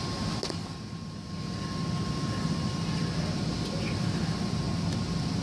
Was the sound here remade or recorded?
recorded